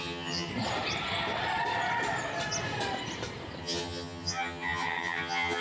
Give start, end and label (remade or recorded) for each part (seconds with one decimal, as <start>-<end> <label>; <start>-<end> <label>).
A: 0.0-0.5 remade; 0.5-3.6 recorded; 3.6-5.6 remade